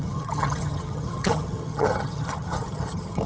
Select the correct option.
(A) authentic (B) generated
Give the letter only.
B